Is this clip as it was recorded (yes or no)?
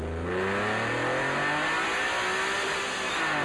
yes